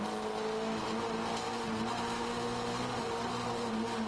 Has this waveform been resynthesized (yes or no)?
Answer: no